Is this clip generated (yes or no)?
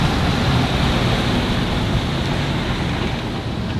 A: no